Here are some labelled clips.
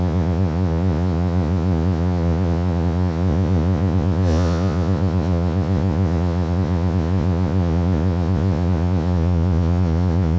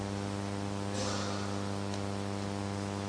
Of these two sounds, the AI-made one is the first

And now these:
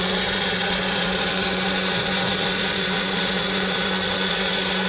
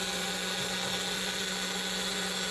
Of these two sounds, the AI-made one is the first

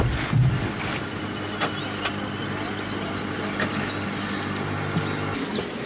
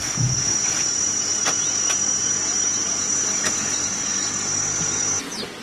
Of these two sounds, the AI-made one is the second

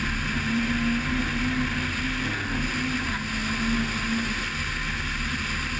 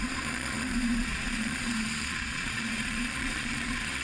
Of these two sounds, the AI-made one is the second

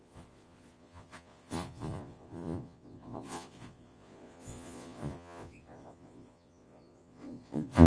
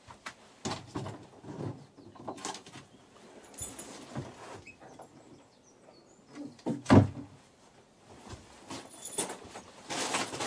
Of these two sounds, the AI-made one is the first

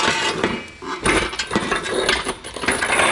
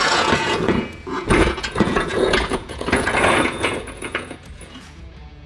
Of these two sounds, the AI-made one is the second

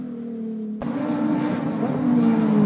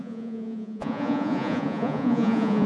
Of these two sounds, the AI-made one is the second